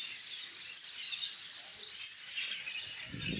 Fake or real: real